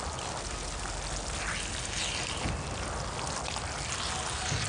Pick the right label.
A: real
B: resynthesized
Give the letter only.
A